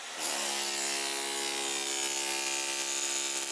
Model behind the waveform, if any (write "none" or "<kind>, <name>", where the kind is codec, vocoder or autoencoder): none